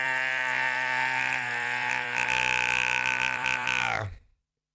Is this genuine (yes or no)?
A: no